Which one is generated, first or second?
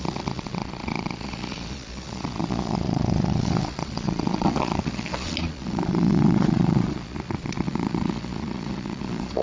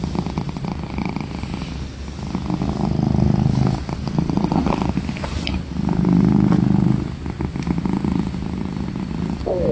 first